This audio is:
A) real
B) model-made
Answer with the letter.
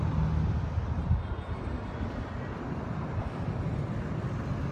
A